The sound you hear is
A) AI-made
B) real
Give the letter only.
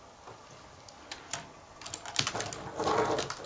B